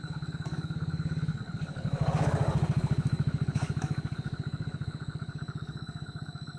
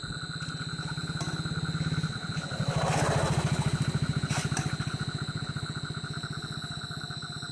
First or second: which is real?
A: second